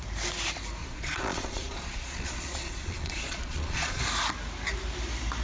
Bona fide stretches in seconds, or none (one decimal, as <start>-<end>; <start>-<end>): 0.0-0.8; 4.0-5.4